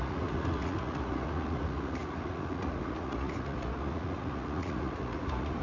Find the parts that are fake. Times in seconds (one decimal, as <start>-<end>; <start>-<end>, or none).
0.0-5.6